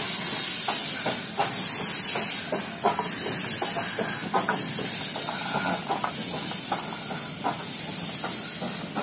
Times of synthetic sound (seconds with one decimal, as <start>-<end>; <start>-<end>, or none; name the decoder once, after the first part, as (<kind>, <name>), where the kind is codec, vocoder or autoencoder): none